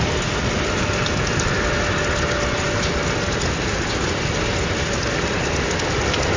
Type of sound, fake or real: real